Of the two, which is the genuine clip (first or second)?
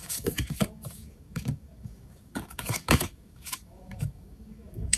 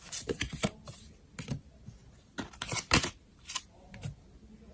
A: second